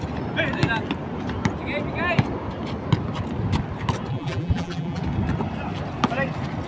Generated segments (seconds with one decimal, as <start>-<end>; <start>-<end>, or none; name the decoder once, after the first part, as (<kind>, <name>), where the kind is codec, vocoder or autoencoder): 4.1-5.0 (vocoder, BigVGAN v2)